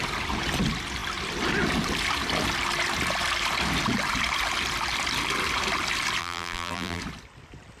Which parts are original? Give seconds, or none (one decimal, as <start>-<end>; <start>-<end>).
0.0-6.2; 7.0-7.8